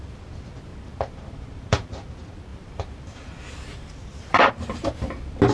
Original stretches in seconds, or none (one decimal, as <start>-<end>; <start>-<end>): 0.0-0.7; 1.9-2.5; 4.5-5.5